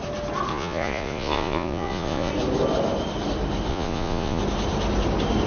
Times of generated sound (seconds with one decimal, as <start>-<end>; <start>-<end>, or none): 0.5-2.3; 3.7-4.4